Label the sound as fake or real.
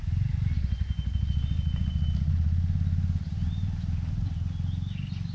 real